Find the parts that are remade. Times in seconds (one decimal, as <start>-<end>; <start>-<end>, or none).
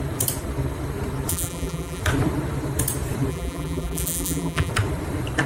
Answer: 1.3-2.0; 3.3-4.7